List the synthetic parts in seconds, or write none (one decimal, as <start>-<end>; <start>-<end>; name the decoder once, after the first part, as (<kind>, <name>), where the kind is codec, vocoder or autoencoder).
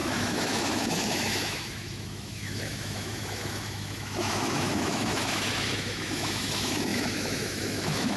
0.0-8.2 (autoencoder, DAC-VAE)